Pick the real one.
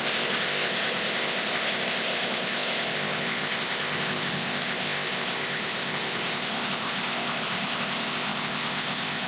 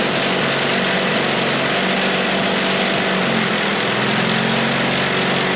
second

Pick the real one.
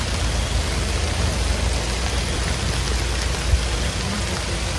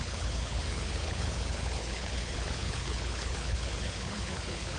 first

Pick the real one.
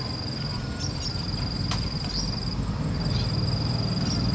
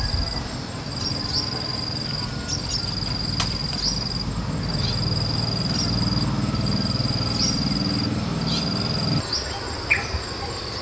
second